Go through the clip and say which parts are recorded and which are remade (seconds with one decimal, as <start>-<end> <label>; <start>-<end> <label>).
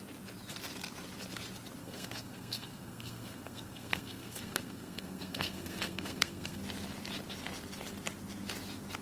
0.0-1.8 recorded; 1.8-6.6 remade; 6.6-9.0 recorded